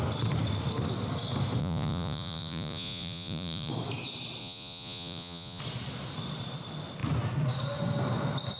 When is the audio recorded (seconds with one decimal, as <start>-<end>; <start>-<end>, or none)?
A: 0.0-1.6; 3.7-4.4; 5.6-8.6